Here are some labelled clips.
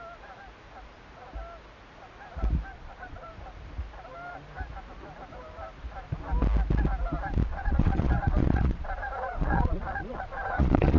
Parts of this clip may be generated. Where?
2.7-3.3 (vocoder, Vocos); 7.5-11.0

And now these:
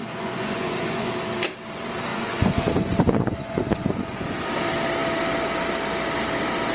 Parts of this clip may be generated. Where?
0.0-1.1 (vocoder, Vocos); 2.1-4.4

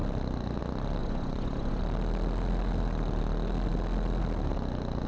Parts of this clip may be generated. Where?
1.0-1.8 (vocoder, Vocos)